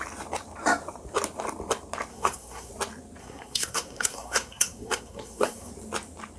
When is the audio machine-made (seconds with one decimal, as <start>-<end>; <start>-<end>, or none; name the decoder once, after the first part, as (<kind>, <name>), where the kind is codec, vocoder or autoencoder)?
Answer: 2.1-2.7 (codec, SNAC); 3.2-5.7